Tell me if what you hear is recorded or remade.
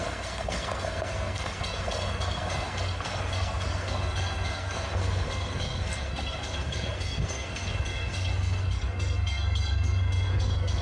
remade